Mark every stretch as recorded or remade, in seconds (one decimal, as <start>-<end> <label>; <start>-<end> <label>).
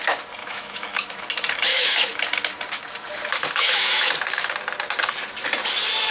0.0-0.4 recorded; 0.4-1.2 remade; 1.2-1.7 recorded; 1.7-2.2 remade; 2.2-3.3 recorded; 3.3-4.1 remade; 4.1-6.1 recorded